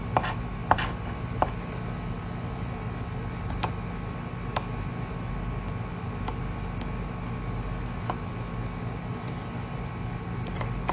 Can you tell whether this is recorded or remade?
recorded